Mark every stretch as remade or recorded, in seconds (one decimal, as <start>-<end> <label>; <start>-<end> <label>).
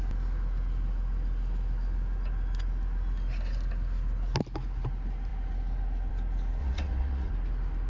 0.0-6.6 recorded; 6.6-7.3 remade; 7.3-7.9 recorded